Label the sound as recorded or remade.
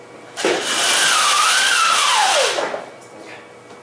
recorded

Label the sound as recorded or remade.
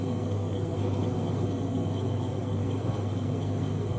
remade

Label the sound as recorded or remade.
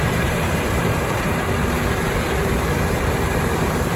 remade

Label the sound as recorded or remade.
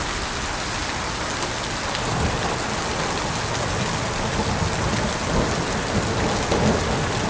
recorded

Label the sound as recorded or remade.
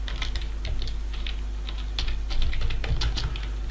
recorded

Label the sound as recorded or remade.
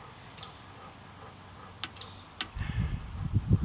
recorded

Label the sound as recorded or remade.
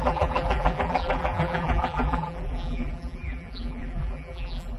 remade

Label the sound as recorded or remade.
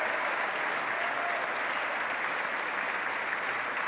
recorded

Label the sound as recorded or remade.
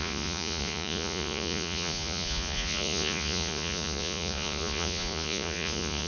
remade